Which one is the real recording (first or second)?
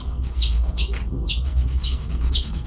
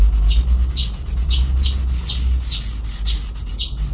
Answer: second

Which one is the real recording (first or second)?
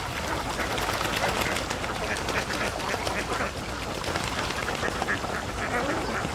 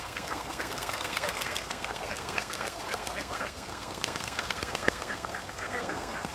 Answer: first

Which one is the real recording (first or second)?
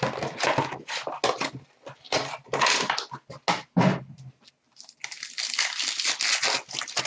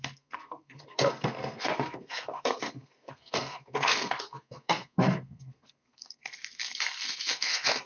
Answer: first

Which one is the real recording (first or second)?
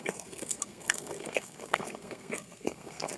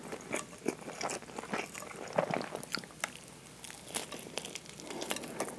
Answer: second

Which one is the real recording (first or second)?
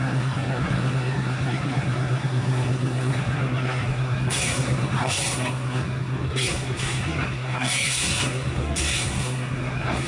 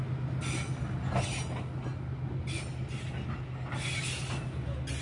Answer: second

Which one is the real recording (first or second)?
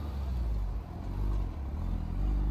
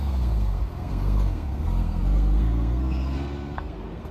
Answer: first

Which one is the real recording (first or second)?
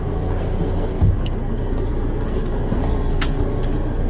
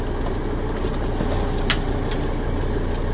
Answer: second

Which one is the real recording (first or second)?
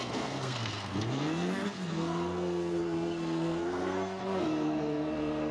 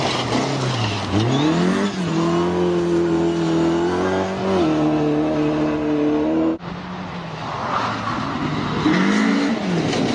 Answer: second